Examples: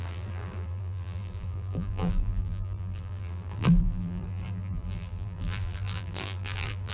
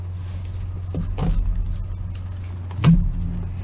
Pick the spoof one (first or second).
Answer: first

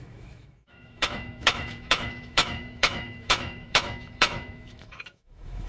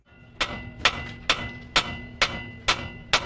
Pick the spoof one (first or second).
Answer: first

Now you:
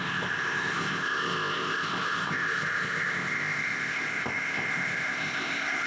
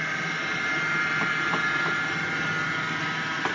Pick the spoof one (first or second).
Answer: first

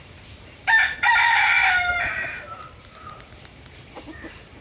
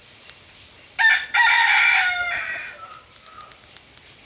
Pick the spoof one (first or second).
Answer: first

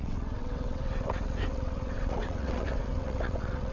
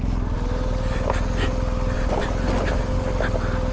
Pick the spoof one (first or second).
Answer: first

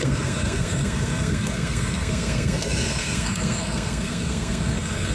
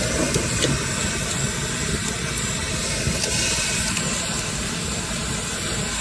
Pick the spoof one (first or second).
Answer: first